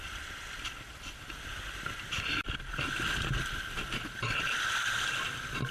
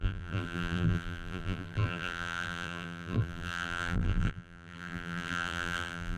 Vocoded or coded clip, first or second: second